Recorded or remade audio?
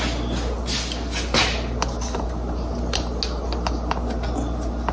recorded